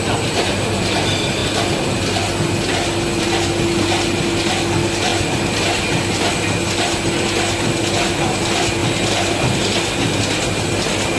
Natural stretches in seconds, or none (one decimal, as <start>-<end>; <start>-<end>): 0.0-11.2